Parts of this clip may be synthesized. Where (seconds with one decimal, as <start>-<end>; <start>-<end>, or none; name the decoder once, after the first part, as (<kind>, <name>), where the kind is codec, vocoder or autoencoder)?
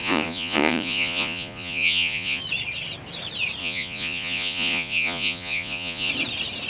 0.0-2.4 (vocoder, Vocos); 3.6-6.1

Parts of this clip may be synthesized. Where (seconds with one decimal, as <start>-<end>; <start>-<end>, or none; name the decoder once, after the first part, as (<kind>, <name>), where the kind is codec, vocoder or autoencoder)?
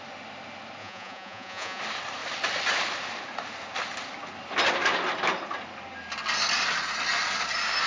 0.8-1.8 (vocoder, Vocos)